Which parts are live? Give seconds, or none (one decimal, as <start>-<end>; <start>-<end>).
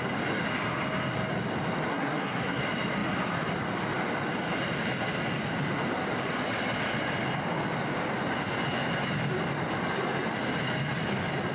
0.0-1.9; 2.6-11.5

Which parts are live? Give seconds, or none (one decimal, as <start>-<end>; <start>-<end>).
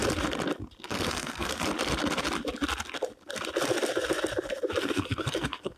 0.0-0.8; 1.5-4.8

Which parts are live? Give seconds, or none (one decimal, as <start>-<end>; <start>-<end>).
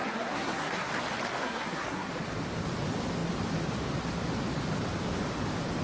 0.9-1.4; 2.1-5.8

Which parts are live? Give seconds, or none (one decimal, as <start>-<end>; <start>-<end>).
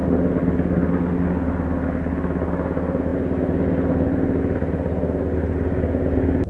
0.0-6.5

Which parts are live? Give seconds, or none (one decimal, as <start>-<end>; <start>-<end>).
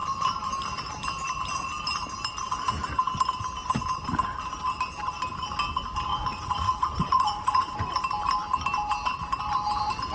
0.0-6.1; 8.0-10.1